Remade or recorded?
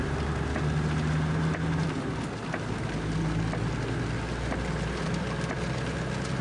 recorded